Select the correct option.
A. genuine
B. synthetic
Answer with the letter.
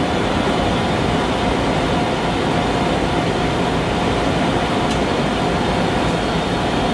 A